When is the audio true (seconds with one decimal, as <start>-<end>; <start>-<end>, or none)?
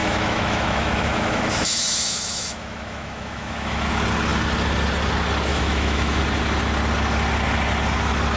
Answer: 3.9-5.5; 6.2-8.4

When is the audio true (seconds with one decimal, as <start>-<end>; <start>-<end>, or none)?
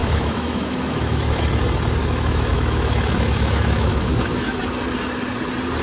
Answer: 1.4-2.0; 4.6-5.8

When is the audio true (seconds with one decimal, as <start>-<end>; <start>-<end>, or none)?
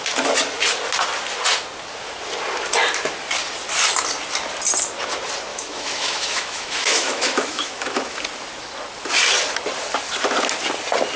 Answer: 0.0-5.5; 8.2-11.2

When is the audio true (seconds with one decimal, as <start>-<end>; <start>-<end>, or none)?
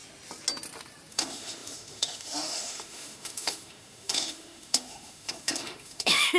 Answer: 0.0-1.1